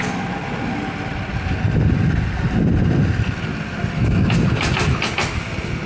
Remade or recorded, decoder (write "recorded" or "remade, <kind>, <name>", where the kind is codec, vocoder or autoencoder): recorded